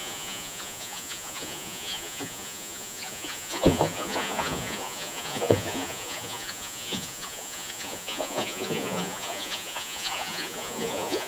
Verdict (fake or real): fake